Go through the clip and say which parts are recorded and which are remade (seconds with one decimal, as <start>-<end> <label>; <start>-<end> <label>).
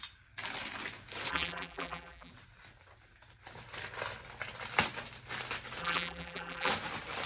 0.0-1.3 recorded; 1.3-2.3 remade; 2.3-5.8 recorded; 5.8-6.7 remade; 6.7-7.3 recorded